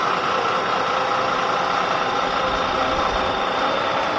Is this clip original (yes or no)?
yes